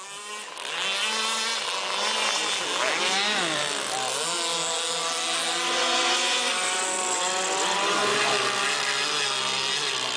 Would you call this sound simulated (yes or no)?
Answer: no